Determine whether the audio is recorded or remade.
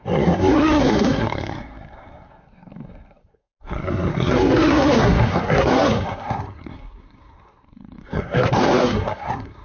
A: remade